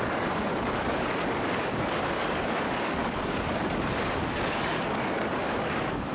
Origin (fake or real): fake